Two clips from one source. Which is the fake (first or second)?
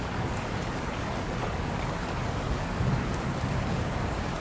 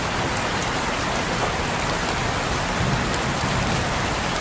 first